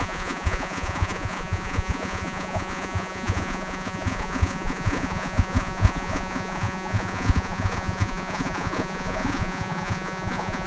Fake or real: fake